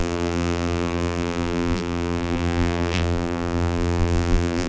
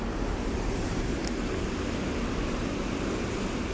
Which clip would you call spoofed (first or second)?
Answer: first